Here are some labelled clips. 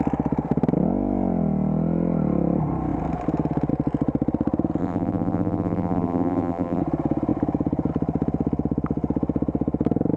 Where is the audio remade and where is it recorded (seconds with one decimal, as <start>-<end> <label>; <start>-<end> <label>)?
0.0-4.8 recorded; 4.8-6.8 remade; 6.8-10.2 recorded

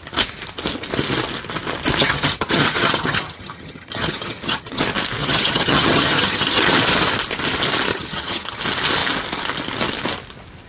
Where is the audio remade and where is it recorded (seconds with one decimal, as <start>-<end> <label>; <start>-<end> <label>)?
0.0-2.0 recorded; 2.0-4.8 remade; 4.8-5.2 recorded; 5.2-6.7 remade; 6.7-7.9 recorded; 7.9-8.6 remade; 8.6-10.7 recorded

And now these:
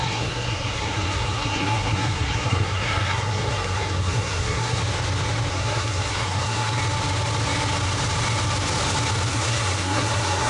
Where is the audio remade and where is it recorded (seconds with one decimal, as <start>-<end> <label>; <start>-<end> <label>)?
0.0-4.8 remade; 4.8-5.5 recorded; 5.5-6.8 remade; 6.8-9.3 recorded; 9.3-10.5 remade

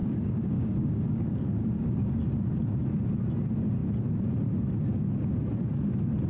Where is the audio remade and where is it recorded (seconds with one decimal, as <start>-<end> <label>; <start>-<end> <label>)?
0.0-2.1 remade; 2.1-6.3 recorded